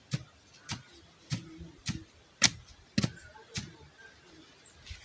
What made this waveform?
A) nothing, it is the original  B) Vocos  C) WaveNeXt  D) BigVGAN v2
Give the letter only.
A